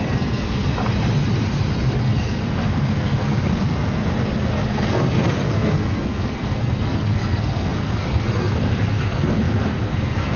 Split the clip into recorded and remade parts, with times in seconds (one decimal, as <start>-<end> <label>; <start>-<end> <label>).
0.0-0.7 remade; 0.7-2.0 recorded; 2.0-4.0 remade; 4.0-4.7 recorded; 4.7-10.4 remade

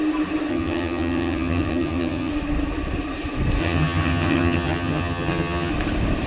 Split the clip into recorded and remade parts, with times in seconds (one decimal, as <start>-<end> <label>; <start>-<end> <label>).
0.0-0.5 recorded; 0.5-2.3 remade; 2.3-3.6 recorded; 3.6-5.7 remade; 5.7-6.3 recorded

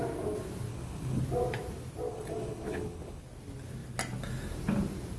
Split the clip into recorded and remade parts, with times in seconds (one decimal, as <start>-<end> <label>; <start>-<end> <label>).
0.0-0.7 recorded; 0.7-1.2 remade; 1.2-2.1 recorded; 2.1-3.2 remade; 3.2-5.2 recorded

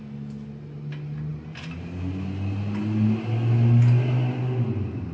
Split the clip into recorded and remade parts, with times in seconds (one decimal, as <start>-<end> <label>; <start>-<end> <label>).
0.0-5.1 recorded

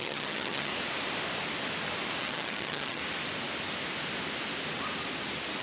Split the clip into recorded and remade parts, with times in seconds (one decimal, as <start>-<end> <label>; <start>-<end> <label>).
0.0-0.7 remade; 0.7-2.2 recorded; 2.2-3.0 remade; 3.0-5.6 recorded

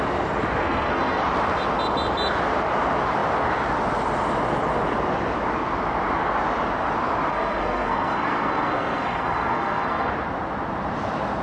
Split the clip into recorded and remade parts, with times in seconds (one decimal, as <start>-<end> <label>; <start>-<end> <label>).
0.0-0.6 recorded; 0.6-1.2 remade; 1.2-7.3 recorded; 7.3-10.1 remade; 10.1-11.4 recorded